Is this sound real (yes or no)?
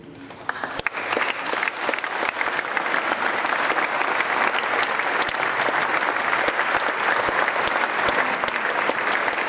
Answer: yes